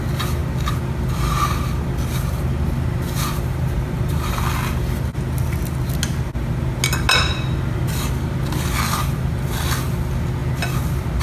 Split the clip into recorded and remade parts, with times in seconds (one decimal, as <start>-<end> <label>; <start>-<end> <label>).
0.0-3.5 recorded; 3.5-4.4 remade; 4.4-11.2 recorded